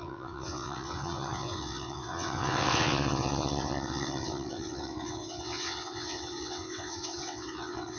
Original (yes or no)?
no